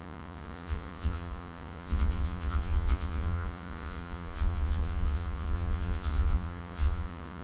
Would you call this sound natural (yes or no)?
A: no